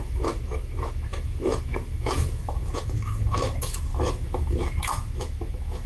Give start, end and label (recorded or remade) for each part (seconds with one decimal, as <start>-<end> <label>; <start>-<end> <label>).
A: 0.0-5.9 remade